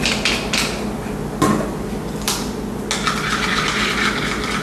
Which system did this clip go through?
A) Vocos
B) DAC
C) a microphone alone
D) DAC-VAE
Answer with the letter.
C